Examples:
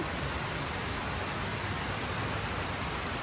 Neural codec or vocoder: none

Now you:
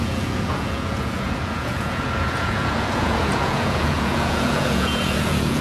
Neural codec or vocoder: vocoder, Vocos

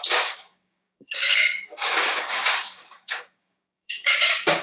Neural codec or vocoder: codec, DAC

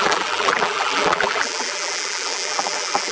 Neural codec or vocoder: vocoder, BigVGAN v2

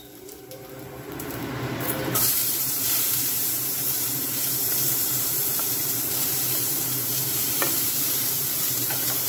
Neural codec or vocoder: vocoder, BigVGAN v2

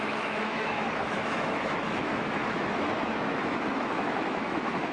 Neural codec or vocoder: autoencoder, DAC-VAE